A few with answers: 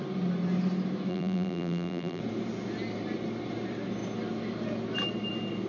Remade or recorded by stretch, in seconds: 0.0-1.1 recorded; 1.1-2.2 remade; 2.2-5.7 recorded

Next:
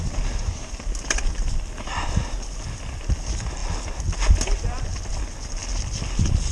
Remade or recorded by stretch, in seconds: 0.0-0.4 recorded; 0.4-1.2 remade; 1.2-6.5 recorded

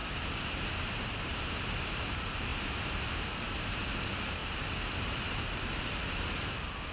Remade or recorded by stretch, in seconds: 0.0-2.0 remade; 2.0-2.5 recorded; 2.5-3.8 remade; 3.8-4.4 recorded; 4.4-5.8 remade; 5.8-6.9 recorded

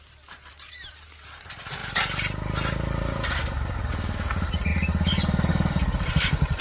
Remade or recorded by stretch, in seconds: 0.0-6.6 remade